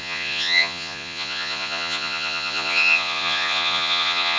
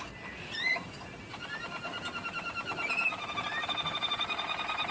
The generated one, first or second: first